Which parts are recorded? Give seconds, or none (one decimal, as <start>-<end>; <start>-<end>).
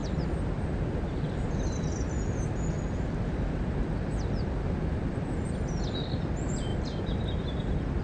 0.0-8.0